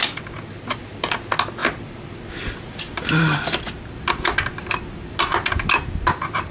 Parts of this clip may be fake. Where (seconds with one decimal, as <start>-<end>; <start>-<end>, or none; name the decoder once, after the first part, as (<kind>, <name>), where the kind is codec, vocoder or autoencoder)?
none